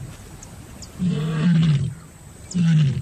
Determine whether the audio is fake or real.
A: real